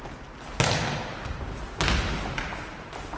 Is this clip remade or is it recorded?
recorded